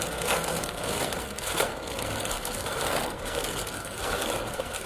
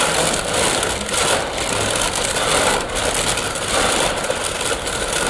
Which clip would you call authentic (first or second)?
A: second